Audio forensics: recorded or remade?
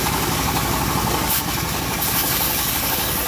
remade